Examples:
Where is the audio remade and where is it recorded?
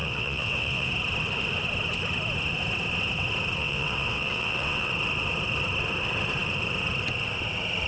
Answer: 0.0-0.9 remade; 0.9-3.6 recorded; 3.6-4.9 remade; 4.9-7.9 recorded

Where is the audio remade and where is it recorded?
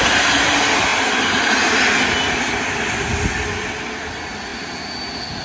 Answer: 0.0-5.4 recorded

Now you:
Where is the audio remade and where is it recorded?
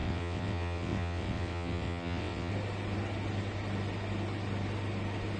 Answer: 0.0-2.5 remade; 2.5-5.4 recorded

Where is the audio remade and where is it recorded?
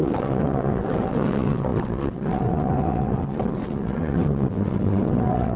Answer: 0.0-5.6 remade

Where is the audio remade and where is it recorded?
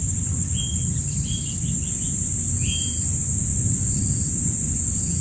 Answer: 0.0-5.2 recorded